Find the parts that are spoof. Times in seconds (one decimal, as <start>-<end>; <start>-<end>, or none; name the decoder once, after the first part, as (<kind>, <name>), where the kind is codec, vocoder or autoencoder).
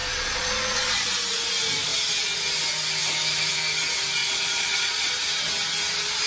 0.0-1.1 (vocoder, Vocos); 4.2-5.1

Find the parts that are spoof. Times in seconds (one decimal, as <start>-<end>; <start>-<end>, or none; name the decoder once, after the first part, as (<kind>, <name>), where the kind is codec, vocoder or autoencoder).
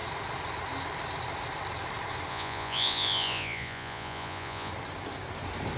2.3-4.7 (vocoder, Vocos)